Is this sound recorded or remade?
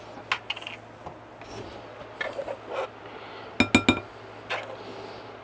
recorded